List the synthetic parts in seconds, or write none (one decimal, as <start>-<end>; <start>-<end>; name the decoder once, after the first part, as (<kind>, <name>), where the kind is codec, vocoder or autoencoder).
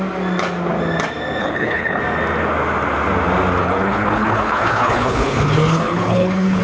1.4-2.0 (codec, HILCodec); 3.6-6.6